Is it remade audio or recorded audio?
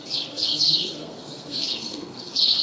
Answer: remade